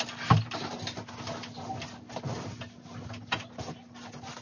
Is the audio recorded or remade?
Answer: recorded